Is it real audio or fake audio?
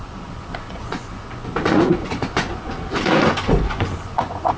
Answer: fake